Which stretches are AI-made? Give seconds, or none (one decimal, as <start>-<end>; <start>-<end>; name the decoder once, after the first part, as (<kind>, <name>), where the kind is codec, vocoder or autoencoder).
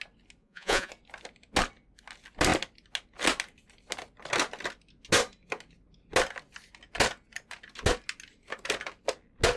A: 0.4-0.9 (vocoder, Vocos)